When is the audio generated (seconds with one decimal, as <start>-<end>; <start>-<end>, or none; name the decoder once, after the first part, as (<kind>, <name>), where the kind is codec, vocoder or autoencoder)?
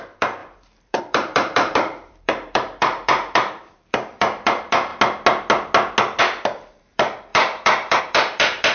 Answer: 0.0-4.9 (vocoder, BigVGAN v2); 6.2-8.7